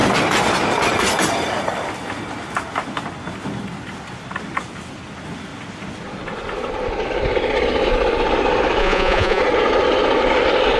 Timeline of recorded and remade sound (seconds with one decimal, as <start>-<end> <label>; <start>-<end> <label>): 0.0-8.8 recorded; 8.8-9.4 remade; 9.4-10.8 recorded